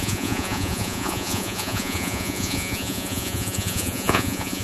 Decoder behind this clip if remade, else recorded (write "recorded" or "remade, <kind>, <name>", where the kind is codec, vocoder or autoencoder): remade, vocoder, Vocos